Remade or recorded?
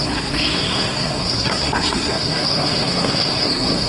remade